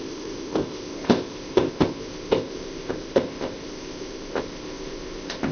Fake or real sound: fake